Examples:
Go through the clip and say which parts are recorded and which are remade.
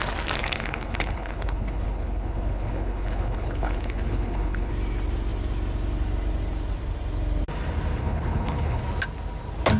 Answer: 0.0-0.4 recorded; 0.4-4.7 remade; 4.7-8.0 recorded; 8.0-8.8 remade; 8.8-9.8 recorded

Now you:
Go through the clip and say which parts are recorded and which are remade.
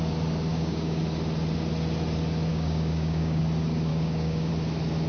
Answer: 0.0-0.5 recorded; 0.5-1.0 remade; 1.0-2.5 recorded; 2.5-3.4 remade; 3.4-3.9 recorded; 3.9-4.5 remade; 4.5-5.1 recorded